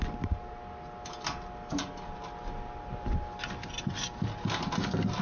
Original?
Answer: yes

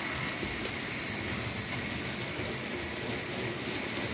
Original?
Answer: yes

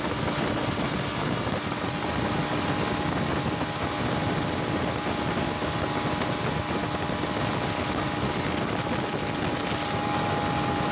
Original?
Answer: yes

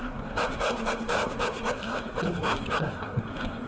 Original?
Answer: no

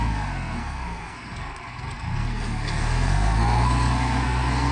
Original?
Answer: no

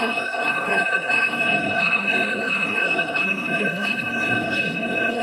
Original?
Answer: no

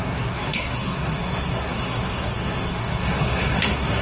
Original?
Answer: no